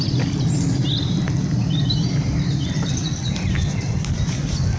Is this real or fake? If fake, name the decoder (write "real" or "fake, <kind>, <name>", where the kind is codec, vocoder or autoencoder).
real